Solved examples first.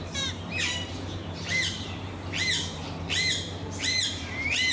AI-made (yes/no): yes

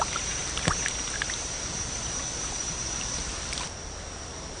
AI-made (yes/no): yes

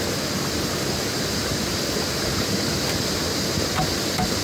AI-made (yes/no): no